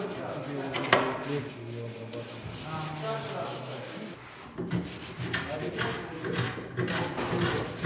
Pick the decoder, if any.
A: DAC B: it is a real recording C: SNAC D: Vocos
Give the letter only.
B